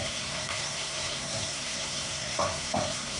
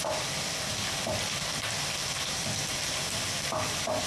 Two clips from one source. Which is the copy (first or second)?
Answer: first